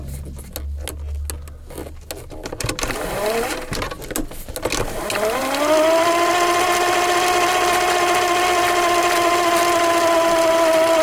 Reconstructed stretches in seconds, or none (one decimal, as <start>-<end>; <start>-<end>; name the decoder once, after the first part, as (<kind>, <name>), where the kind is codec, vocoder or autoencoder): none